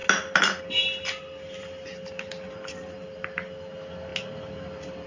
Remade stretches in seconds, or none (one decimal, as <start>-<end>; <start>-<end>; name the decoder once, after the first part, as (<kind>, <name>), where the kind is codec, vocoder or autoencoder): none